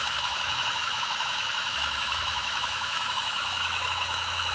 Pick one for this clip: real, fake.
fake